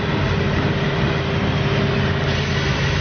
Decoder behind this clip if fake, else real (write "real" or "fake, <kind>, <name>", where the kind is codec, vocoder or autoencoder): real